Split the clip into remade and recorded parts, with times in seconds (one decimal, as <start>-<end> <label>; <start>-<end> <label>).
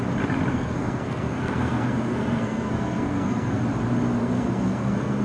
0.0-0.5 recorded; 0.5-3.6 remade; 3.6-4.2 recorded; 4.2-5.2 remade